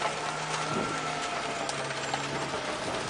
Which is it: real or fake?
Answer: real